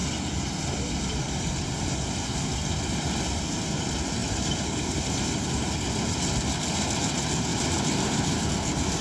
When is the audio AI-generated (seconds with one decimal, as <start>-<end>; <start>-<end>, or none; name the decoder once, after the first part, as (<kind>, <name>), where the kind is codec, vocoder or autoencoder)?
4.2-5.4 (vocoder, BigVGAN v2); 7.5-8.4